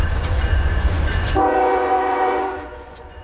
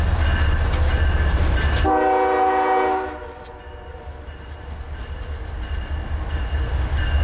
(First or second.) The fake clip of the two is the first